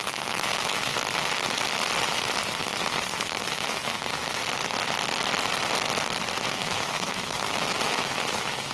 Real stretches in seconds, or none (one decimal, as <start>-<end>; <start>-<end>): 0.9-3.2; 4.4-6.5